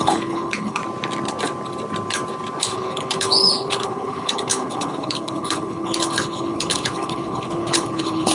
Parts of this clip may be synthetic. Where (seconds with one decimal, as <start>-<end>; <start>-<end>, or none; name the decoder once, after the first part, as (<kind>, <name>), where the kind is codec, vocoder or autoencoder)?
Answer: 0.0-0.8 (codec, HILCodec); 2.6-8.3